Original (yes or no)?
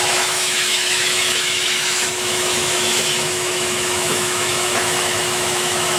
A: no